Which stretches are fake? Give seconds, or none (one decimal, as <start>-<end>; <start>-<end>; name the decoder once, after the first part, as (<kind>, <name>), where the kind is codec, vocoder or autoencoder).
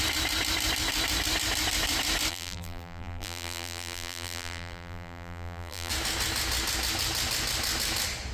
2.3-5.9 (vocoder, BigVGAN v2)